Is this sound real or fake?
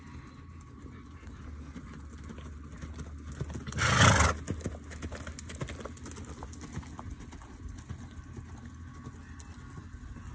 real